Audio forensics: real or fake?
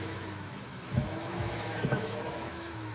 fake